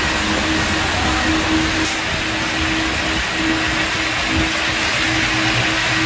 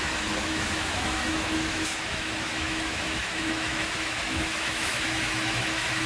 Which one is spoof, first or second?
second